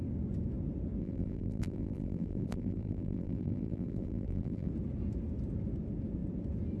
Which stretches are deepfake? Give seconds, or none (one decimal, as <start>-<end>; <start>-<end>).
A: 1.0-4.7